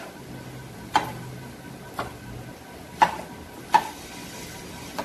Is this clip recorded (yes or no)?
yes